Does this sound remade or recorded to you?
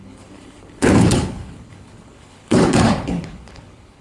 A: remade